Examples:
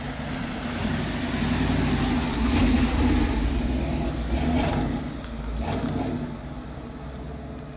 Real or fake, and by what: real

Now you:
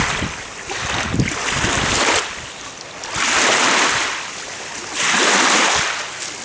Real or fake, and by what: real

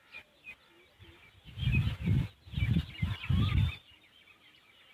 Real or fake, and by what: real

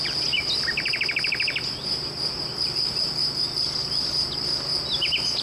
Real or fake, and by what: real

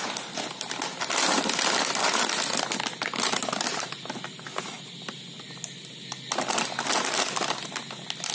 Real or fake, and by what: real